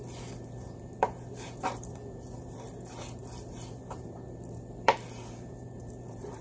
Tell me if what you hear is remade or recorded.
remade